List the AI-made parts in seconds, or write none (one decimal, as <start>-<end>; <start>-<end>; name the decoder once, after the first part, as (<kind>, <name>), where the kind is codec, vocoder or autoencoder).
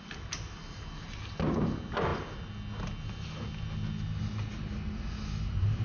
none